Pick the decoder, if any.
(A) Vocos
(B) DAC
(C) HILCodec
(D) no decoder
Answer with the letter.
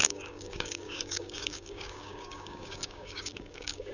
B